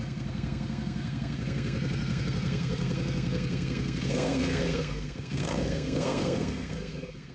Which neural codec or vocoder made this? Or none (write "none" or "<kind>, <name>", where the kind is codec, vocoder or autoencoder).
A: codec, SNAC